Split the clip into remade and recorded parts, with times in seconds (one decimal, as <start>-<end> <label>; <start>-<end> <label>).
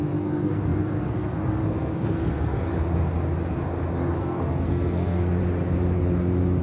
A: 0.0-2.7 remade; 2.7-4.2 recorded; 4.2-5.4 remade; 5.4-6.6 recorded